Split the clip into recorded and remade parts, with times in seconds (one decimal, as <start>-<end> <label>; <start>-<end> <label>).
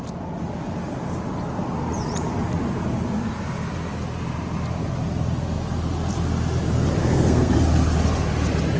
0.0-7.0 recorded; 7.0-7.5 remade; 7.5-8.8 recorded